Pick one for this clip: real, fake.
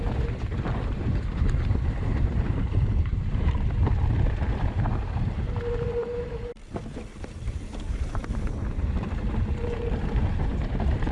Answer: fake